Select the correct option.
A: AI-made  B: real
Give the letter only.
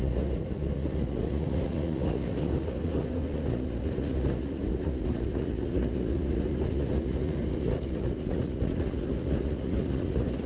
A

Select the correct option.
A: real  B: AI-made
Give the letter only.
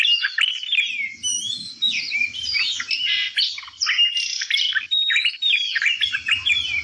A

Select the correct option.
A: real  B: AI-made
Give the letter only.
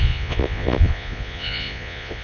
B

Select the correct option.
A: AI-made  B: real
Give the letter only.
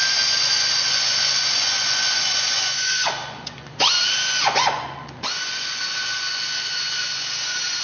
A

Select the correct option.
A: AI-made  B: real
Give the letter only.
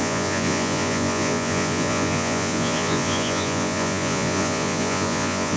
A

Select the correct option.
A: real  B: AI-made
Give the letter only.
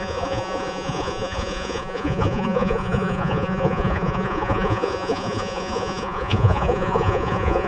B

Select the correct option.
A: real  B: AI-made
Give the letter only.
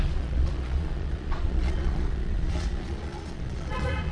B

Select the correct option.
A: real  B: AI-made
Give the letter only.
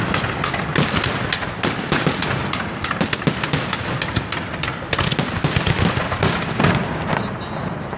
A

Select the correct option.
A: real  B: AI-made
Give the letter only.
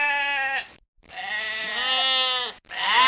A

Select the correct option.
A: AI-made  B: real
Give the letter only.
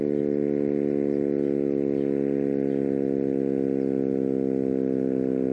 B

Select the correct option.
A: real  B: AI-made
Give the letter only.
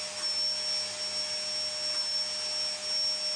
A